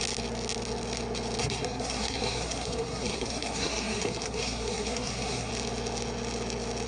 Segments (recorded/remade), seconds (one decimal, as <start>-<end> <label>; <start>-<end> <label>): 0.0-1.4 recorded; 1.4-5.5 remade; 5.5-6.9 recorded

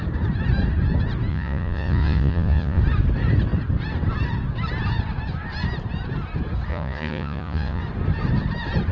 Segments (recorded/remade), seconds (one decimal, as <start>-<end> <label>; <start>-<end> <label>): 0.0-1.3 recorded; 1.3-2.8 remade; 2.8-6.7 recorded; 6.7-7.8 remade; 7.8-8.9 recorded

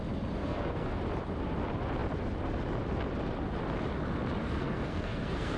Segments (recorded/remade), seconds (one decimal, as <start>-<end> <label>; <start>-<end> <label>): 0.0-0.4 recorded; 0.4-1.0 remade; 1.0-4.4 recorded; 4.4-5.6 remade

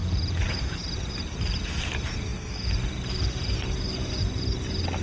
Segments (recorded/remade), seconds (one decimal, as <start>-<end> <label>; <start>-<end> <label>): 0.0-1.8 remade; 1.8-5.0 recorded

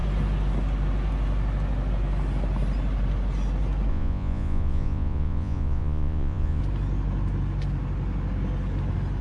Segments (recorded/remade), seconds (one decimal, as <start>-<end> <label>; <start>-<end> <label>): 0.0-3.9 recorded; 3.9-6.6 remade; 6.6-9.2 recorded

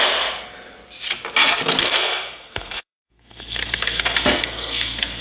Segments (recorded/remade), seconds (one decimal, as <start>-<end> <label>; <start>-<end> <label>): 0.0-1.8 recorded; 1.8-5.2 remade

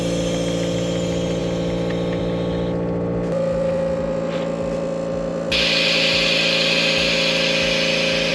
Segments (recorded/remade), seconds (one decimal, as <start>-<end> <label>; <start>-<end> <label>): 0.0-8.3 recorded

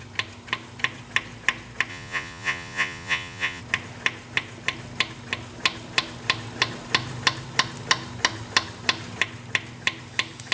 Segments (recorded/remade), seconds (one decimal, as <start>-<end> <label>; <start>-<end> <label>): 0.0-1.9 recorded; 1.9-3.6 remade; 3.6-10.5 recorded